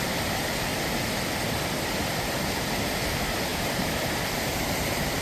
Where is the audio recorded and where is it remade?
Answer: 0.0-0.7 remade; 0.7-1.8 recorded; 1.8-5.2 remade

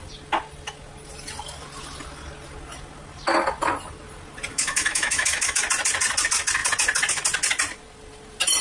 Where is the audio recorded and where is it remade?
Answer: 0.0-4.5 recorded; 4.5-5.6 remade; 5.6-8.6 recorded